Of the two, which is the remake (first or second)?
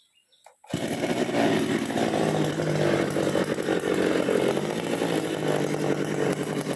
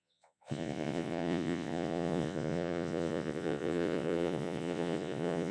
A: second